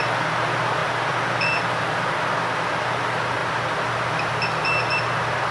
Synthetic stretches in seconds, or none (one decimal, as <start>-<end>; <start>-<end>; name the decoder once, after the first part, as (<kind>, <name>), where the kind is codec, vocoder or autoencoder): 0.8-2.6 (vocoder, BigVGAN v2); 3.4-4.3